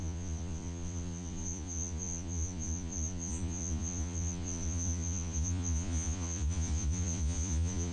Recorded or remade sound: remade